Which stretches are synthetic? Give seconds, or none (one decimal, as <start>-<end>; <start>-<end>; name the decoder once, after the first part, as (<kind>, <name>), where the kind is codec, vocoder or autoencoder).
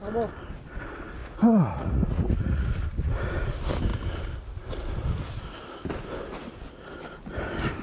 1.2-2.7 (vocoder, Vocos)